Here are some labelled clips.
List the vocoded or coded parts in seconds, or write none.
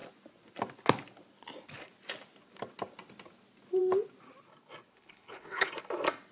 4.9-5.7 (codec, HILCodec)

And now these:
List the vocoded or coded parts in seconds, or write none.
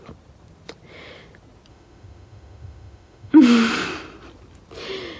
1.7-3.4 (autoencoder, DAC-VAE)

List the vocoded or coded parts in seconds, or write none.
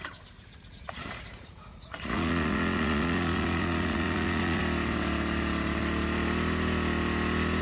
0.0-4.6 (vocoder, Vocos)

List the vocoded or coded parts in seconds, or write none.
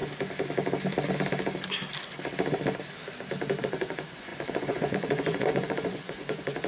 3.6-6.7 (vocoder, Vocos)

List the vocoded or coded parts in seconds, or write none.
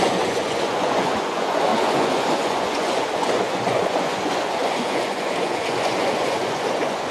0.0-7.1 (vocoder, Vocos)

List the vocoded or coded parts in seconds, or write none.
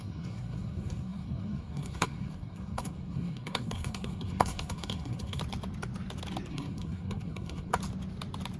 0.0-5.4 (codec, SNAC); 6.5-7.7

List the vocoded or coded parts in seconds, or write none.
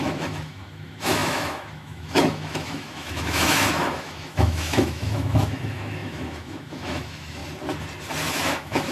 0.0-7.4 (autoencoder, DAC-VAE); 8.3-8.9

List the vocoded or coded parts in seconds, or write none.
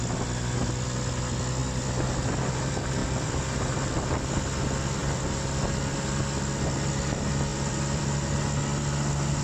3.0-3.7 (vocoder, BigVGAN v2); 5.0-5.6; 7.5-8.0